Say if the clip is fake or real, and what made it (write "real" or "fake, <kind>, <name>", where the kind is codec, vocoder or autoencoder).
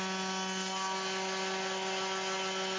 real